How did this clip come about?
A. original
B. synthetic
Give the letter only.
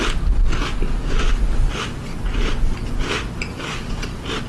A